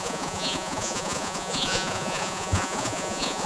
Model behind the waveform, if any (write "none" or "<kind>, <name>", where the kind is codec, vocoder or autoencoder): vocoder, Vocos